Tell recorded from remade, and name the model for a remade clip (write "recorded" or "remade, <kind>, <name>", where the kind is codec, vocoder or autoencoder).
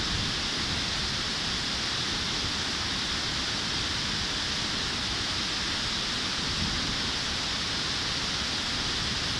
recorded